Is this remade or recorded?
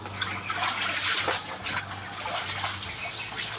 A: recorded